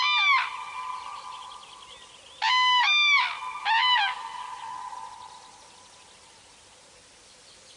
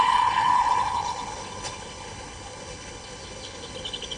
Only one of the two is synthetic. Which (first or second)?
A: second